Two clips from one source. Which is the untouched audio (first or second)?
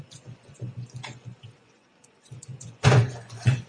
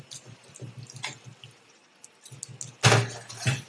second